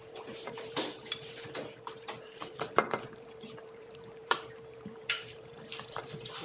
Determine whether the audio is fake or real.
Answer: fake